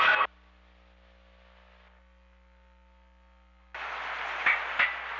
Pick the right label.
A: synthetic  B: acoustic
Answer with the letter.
B